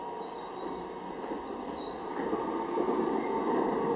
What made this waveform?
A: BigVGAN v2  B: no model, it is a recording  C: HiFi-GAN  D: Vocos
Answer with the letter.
B